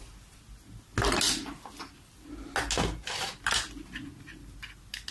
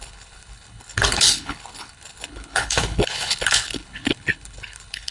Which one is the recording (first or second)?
first